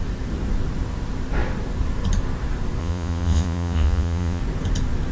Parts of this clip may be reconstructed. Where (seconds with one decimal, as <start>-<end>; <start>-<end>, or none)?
2.8-4.4